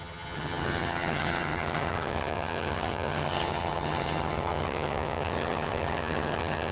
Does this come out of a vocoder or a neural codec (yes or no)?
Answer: yes